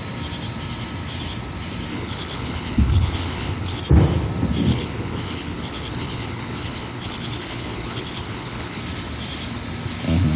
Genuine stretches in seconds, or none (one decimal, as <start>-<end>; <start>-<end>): 0.0-1.9; 3.8-4.7; 8.8-10.4